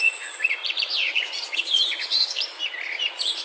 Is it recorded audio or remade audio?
remade